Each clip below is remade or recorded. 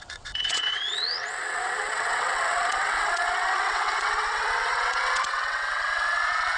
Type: remade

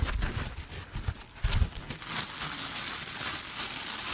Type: recorded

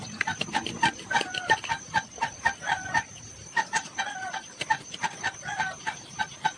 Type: recorded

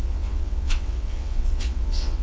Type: remade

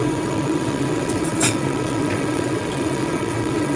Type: remade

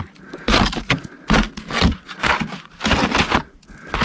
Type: recorded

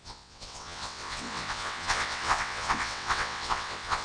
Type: remade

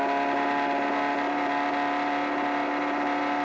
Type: recorded